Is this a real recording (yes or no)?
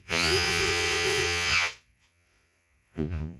no